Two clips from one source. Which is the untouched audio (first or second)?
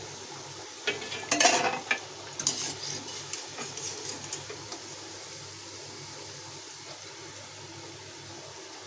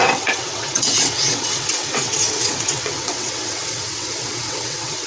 first